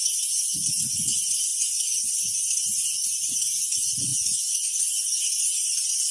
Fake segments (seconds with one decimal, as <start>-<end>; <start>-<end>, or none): 1.5-2.2